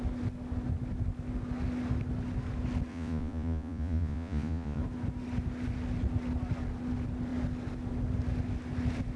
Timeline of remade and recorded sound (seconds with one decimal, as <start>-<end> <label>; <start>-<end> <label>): 0.0-2.9 recorded; 2.9-4.8 remade; 4.8-9.2 recorded